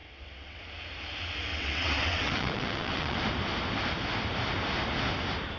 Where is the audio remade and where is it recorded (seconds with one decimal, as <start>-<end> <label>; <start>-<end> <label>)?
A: 0.0-0.6 remade; 0.6-1.5 recorded; 1.5-3.2 remade; 3.2-5.6 recorded